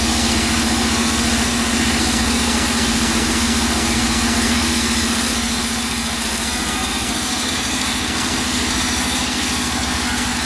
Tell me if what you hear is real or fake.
fake